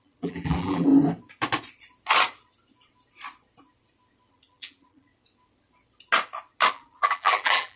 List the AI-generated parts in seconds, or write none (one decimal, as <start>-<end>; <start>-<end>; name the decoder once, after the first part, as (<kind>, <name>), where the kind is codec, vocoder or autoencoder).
0.0-0.9 (vocoder, BigVGAN v2); 4.3-5.1; 6.7-7.8